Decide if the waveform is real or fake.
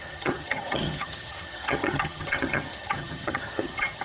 fake